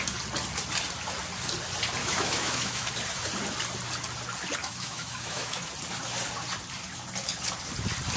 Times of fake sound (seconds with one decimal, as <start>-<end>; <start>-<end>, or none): 2.0-2.9; 4.6-5.7